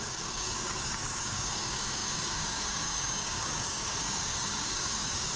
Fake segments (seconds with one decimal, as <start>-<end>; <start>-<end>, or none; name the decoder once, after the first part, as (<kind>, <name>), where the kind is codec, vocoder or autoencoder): 0.0-5.4 (codec, DAC)